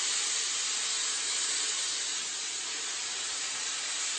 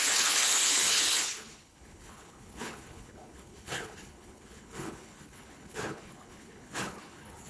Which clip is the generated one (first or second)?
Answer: second